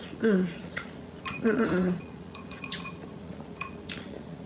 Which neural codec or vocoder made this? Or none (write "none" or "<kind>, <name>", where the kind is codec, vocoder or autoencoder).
vocoder, Vocos